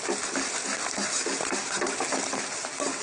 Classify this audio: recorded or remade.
recorded